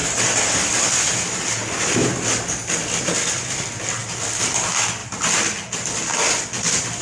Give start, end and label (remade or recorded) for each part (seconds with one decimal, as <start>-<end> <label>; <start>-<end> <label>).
0.0-1.0 remade; 1.0-7.0 recorded